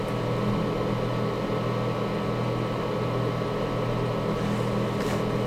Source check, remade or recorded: recorded